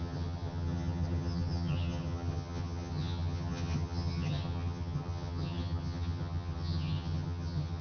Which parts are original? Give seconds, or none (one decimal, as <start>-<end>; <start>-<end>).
none